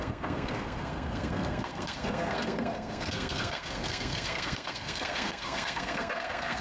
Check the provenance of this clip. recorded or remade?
remade